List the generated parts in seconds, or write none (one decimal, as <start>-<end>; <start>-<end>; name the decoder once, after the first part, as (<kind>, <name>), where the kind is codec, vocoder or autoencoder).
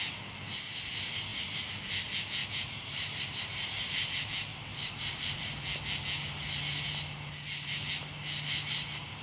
2.4-3.2 (vocoder, BigVGAN v2); 4.5-5.4